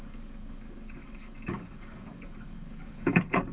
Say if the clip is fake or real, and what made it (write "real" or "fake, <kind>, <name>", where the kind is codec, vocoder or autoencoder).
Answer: fake, codec, DAC